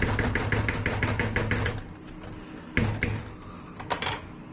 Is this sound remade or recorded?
recorded